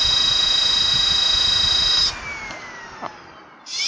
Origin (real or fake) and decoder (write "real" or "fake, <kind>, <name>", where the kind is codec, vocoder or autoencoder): real